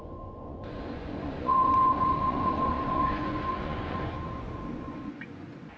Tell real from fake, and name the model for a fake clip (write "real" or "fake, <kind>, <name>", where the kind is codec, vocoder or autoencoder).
fake, vocoder, Vocos